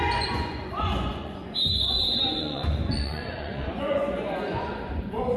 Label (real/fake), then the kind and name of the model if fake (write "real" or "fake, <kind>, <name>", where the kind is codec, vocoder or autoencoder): fake, vocoder, Vocos